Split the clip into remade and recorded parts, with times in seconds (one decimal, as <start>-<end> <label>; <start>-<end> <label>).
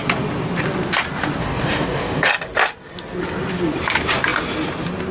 0.0-1.4 recorded; 1.4-2.3 remade; 2.3-5.1 recorded